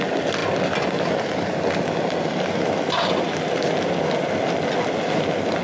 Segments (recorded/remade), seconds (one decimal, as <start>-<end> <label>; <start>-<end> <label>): 0.0-5.6 recorded